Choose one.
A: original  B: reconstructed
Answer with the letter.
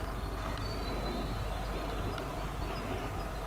A